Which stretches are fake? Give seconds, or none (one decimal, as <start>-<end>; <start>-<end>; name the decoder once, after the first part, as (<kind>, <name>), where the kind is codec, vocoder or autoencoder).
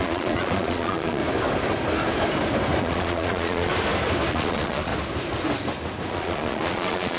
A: 0.0-1.2 (vocoder, Vocos); 2.8-3.7; 4.3-4.9; 6.1-7.2